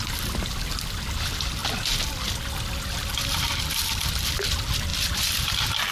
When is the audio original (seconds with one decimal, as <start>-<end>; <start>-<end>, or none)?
0.0-5.9